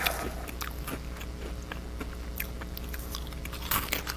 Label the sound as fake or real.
real